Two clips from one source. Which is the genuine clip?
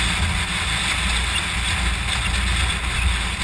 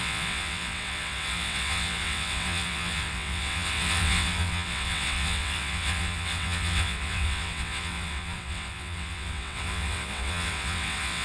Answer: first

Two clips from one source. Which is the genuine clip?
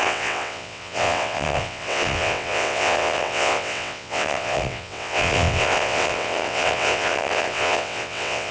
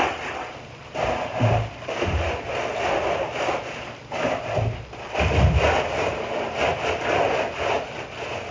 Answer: second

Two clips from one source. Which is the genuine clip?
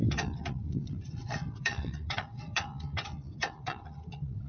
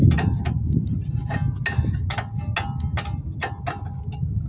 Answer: second